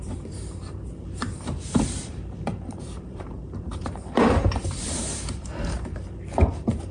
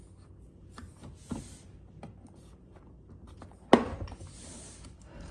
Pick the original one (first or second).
second